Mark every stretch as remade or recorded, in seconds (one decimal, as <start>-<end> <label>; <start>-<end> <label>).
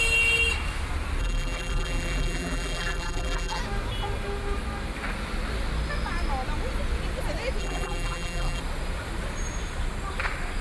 0.0-1.2 recorded; 1.2-3.6 remade; 3.6-7.6 recorded; 7.6-8.6 remade; 8.6-10.6 recorded